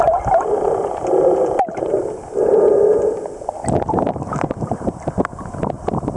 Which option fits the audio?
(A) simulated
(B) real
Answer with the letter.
B